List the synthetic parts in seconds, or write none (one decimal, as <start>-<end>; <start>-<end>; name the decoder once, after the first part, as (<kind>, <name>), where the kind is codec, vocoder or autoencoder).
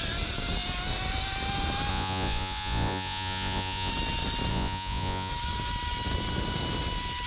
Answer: 1.9-3.9 (vocoder, Vocos); 4.5-5.3